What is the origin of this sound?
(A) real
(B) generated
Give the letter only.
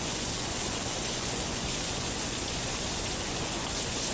B